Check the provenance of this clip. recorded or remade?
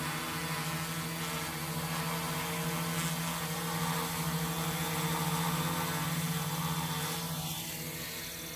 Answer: recorded